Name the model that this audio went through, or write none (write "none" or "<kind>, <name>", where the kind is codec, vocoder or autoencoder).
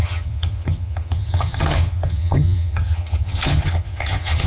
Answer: vocoder, HiFi-GAN